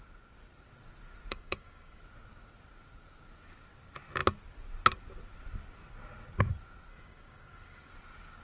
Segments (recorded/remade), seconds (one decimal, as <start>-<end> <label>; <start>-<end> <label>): 0.0-1.3 recorded; 1.3-2.0 remade; 2.0-6.9 recorded; 6.9-7.9 remade; 7.9-8.4 recorded